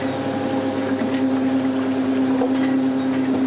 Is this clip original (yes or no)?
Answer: yes